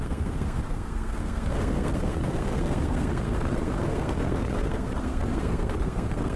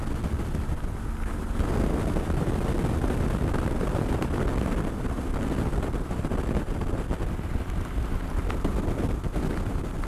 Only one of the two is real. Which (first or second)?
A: second